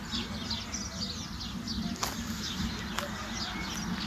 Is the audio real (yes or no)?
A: yes